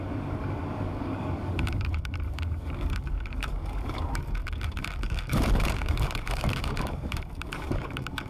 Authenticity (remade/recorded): remade